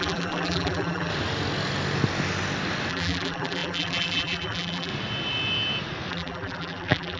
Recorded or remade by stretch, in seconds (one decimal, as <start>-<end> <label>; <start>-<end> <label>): 0.0-1.1 remade; 1.1-2.9 recorded; 2.9-4.9 remade; 4.9-6.1 recorded; 6.1-7.2 remade